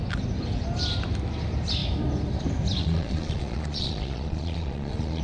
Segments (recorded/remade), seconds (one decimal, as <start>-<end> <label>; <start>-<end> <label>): 0.0-2.8 recorded; 2.8-5.2 remade

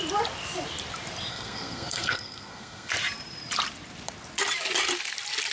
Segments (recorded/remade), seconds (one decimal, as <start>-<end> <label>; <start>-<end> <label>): 0.0-1.3 recorded; 1.3-2.9 remade; 2.9-5.5 recorded

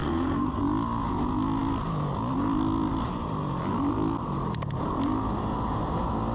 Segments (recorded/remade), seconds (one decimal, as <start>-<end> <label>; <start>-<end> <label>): 0.0-0.6 remade; 0.6-6.3 recorded